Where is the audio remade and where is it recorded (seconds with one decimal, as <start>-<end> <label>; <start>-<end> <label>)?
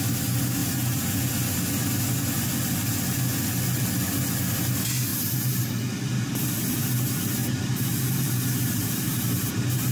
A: 0.0-0.6 recorded; 0.6-1.3 remade; 1.3-5.1 recorded; 5.1-5.7 remade; 5.7-7.4 recorded; 7.4-9.9 remade